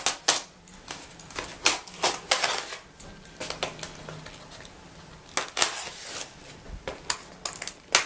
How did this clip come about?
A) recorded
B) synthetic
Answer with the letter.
A